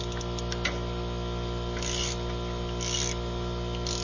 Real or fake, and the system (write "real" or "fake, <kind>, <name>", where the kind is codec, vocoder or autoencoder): real